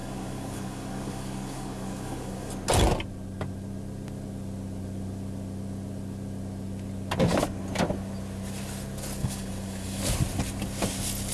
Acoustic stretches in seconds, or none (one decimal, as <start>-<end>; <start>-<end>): 2.5-9.2; 10.0-11.3